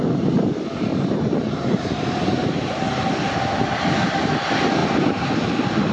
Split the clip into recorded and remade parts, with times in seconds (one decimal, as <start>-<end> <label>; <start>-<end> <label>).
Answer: 0.0-0.9 recorded; 0.9-1.6 remade; 1.6-2.4 recorded; 2.4-2.9 remade; 2.9-4.8 recorded; 4.8-5.3 remade; 5.3-5.9 recorded